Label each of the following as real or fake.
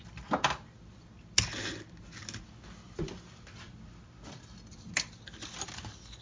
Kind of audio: real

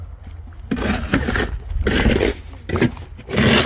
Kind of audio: real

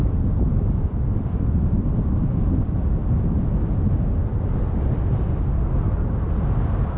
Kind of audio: real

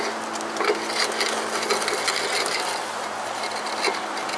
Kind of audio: real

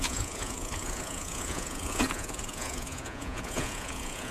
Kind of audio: fake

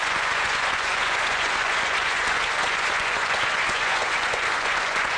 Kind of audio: fake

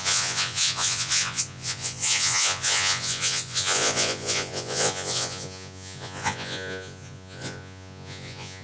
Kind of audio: fake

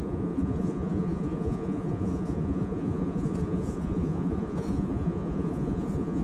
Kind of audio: fake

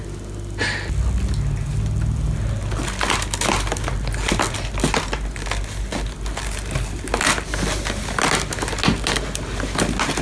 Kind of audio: real